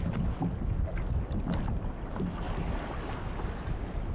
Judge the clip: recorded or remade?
recorded